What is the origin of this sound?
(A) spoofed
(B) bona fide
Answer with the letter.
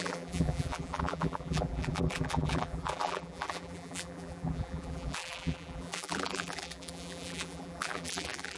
A